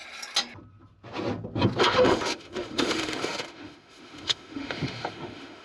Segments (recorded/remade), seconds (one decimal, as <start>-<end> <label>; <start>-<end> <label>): 0.0-1.8 recorded; 1.8-5.6 remade